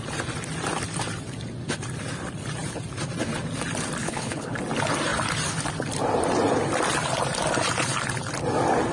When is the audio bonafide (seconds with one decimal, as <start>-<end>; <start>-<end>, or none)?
0.0-4.0; 4.5-8.9